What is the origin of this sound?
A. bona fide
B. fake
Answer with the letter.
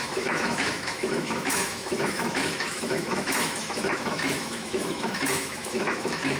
B